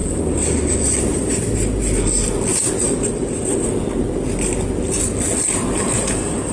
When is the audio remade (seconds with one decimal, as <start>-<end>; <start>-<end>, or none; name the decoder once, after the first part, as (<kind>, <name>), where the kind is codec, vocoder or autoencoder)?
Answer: none